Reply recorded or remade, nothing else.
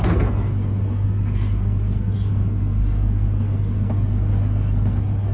remade